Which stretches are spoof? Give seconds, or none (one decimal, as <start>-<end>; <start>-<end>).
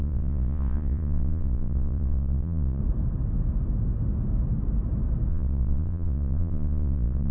0.0-2.8; 5.3-7.3